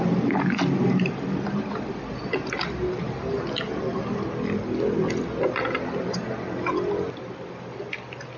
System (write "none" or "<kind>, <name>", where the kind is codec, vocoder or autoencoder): none